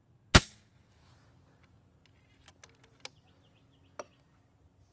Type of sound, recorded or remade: recorded